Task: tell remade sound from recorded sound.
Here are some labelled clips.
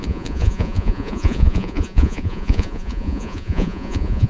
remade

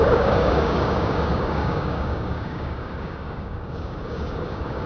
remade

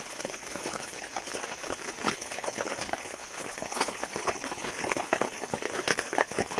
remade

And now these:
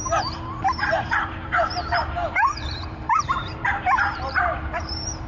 remade